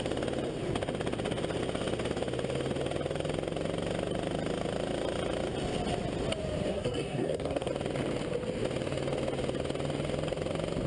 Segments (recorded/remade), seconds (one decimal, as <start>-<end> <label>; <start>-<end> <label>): 0.0-6.7 recorded; 6.7-7.7 remade; 7.7-10.9 recorded